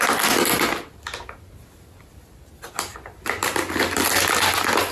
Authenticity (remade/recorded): recorded